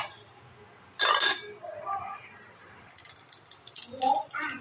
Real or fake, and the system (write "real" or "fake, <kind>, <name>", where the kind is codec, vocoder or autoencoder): real